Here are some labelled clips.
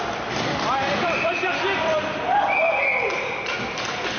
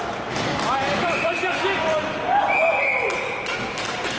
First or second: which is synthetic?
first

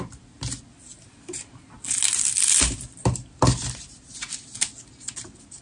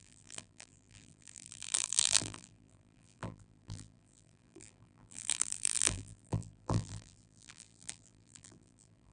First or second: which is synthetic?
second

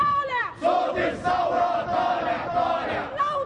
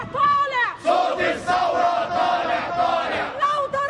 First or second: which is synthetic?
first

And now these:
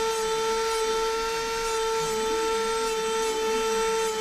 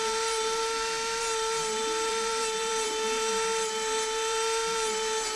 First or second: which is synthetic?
second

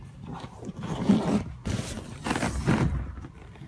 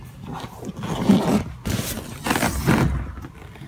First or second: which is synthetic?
first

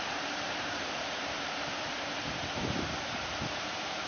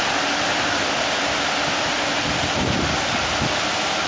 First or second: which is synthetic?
first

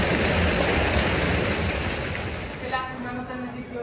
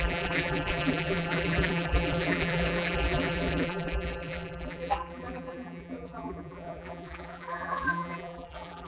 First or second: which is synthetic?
second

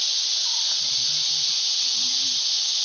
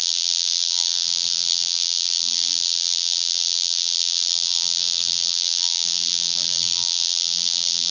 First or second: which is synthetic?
second